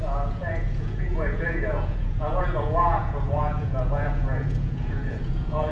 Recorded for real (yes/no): no